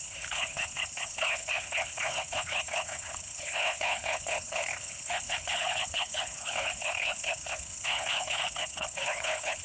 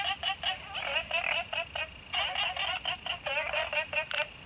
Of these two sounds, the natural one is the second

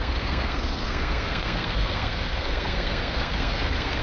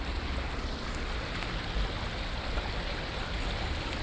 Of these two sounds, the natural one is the second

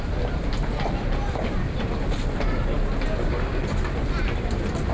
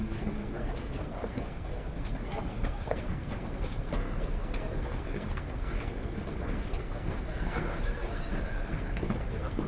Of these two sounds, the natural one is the first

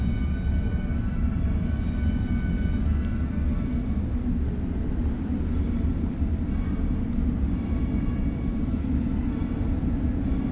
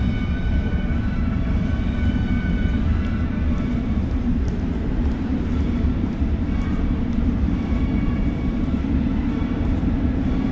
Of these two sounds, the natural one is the first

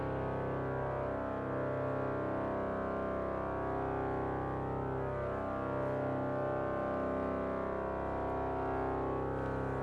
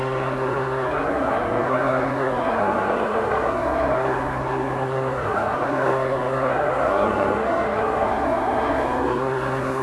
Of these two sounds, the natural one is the first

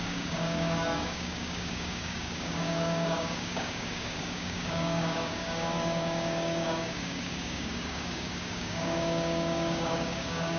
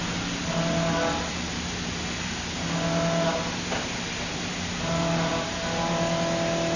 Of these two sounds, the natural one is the second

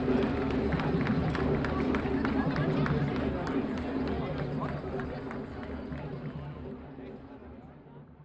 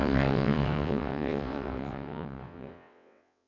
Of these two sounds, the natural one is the first